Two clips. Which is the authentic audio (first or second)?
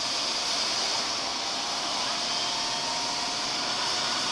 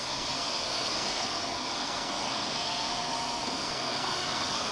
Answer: first